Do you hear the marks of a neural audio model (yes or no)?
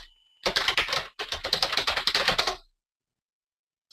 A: no